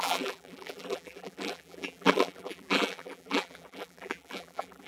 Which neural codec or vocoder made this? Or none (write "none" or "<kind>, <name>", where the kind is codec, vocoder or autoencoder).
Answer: vocoder, BigVGAN v2